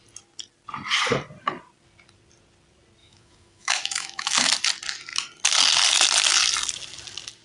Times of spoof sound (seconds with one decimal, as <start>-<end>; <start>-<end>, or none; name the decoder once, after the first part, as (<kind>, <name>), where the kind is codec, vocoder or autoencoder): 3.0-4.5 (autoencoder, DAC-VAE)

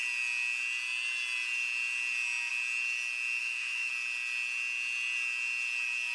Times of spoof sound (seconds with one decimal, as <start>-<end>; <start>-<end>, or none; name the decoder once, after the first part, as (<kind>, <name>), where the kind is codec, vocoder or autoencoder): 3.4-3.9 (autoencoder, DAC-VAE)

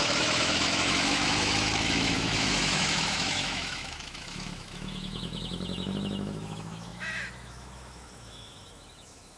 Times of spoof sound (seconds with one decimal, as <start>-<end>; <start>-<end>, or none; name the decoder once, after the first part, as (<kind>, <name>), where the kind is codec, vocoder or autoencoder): 0.0-9.4 (autoencoder, DAC-VAE)

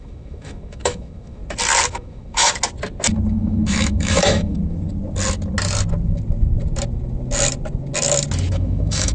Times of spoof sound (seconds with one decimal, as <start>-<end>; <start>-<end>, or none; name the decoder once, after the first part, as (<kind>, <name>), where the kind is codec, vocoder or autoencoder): 0.0-1.4 (autoencoder, DAC-VAE); 1.9-2.5; 3.3-4.6; 8.5-9.1

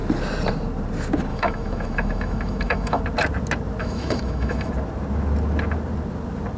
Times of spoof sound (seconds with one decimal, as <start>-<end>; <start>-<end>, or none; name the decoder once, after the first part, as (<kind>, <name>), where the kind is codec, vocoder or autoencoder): 1.3-3.0 (autoencoder, DAC-VAE); 3.8-4.7

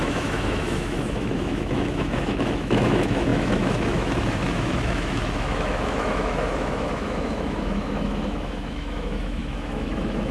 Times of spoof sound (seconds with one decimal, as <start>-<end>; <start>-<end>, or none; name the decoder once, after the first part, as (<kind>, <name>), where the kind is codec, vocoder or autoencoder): 0.0-10.3 (autoencoder, DAC-VAE)